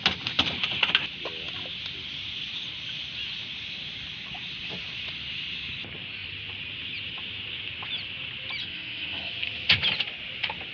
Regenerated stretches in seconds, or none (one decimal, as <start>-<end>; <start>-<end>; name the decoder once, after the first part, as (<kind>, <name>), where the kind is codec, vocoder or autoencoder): 8.6-9.3 (codec, SNAC)